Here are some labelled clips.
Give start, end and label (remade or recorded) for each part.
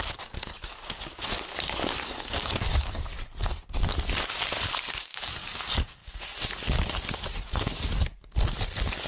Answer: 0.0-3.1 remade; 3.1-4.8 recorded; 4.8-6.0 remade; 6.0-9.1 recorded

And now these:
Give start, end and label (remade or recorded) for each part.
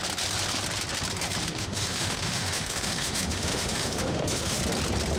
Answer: 0.0-1.5 recorded; 1.5-4.6 remade; 4.6-5.2 recorded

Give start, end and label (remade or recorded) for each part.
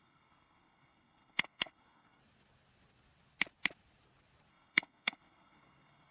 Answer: 0.0-2.2 remade; 2.2-4.5 recorded; 4.5-6.1 remade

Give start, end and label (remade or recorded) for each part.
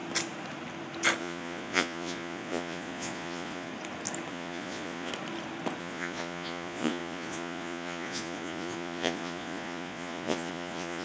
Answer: 0.0-1.2 recorded; 1.2-3.7 remade; 3.7-4.3 recorded; 4.3-5.1 remade; 5.1-5.8 recorded; 5.8-11.0 remade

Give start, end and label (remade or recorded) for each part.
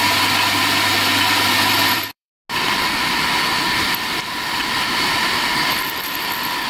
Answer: 0.0-1.7 recorded; 1.7-2.3 remade; 2.3-5.7 recorded; 5.7-6.7 remade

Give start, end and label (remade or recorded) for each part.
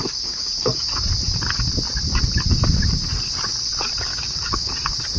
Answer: 0.0-0.9 remade; 0.9-4.1 recorded; 4.1-4.7 remade; 4.7-5.2 recorded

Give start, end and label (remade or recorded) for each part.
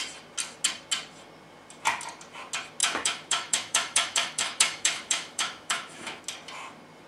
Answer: 0.0-2.8 recorded; 2.8-6.2 remade; 6.2-7.1 recorded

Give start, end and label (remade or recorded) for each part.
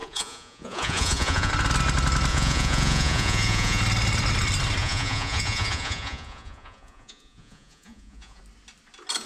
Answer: 0.0-1.5 remade; 1.5-2.3 recorded; 2.3-3.8 remade; 3.8-4.8 recorded; 4.8-8.4 remade; 8.4-9.3 recorded